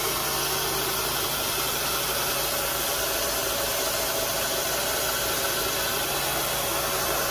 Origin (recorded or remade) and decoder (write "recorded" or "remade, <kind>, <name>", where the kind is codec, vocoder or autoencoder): recorded